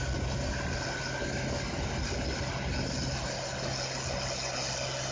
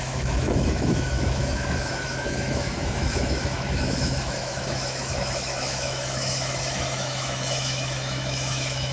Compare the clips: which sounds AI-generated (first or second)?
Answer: second